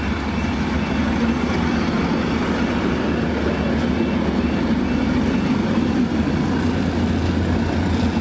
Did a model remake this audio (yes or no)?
no